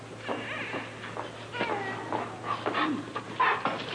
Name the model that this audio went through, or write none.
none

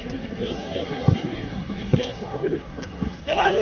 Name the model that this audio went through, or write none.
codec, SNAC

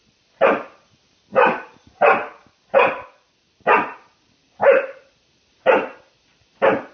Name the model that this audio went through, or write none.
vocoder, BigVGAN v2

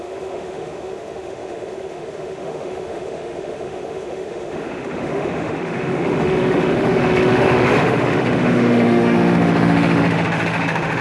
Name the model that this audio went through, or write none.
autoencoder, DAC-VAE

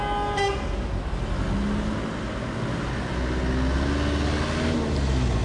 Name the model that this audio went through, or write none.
none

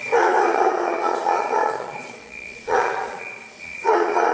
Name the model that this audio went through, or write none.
vocoder, Vocos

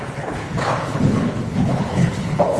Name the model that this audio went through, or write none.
codec, HILCodec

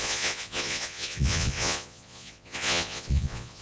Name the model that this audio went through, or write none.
vocoder, Vocos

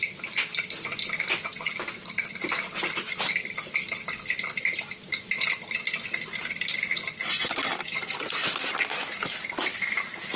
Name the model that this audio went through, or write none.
none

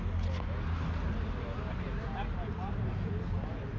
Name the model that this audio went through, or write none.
none